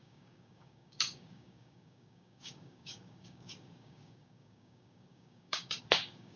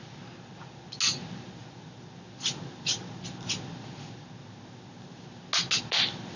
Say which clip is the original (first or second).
second